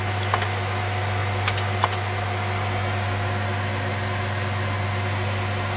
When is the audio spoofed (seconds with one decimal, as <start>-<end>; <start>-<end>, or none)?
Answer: none